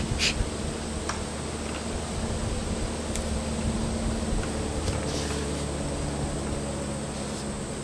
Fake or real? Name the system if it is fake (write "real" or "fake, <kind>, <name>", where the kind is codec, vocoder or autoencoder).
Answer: real